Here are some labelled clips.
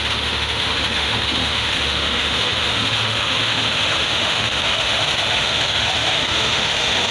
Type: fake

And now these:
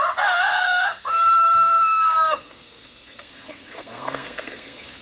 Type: fake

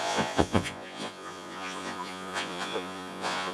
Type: fake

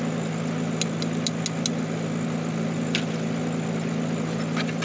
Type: real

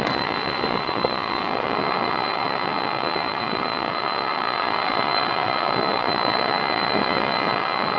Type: fake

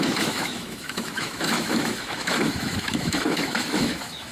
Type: fake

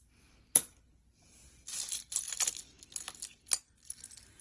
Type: real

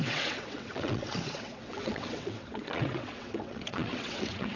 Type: fake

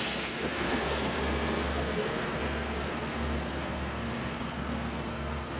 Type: fake